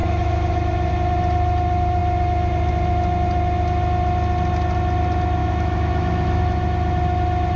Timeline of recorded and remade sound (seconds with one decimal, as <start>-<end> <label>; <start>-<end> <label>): 0.0-0.9 remade; 0.9-5.4 recorded; 5.4-6.4 remade; 6.4-7.6 recorded